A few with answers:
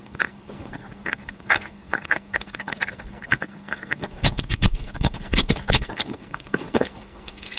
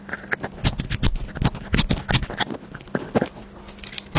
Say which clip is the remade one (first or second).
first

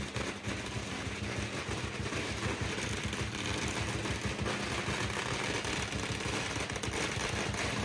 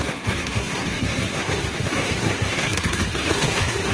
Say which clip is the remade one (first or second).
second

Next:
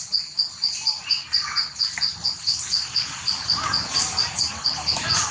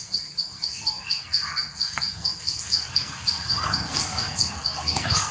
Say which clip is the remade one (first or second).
second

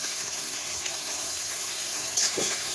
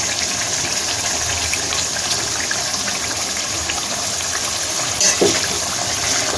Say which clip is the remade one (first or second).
first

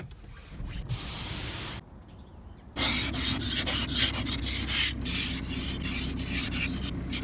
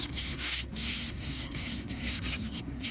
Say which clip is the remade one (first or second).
second